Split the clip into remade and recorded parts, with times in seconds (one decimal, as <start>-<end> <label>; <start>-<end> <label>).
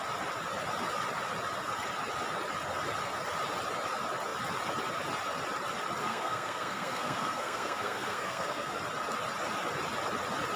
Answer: 0.0-6.0 recorded; 6.0-8.8 remade; 8.8-10.6 recorded